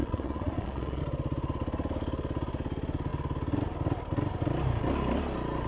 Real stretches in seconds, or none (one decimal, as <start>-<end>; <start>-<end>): 1.0-5.7

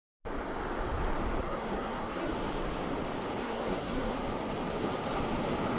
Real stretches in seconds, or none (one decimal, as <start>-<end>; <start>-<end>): 0.0-1.4; 2.3-3.4; 4.2-5.8